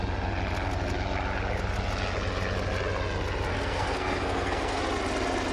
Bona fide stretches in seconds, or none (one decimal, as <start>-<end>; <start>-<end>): 0.0-3.5; 4.8-5.5